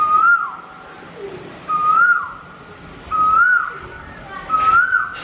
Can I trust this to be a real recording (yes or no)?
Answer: yes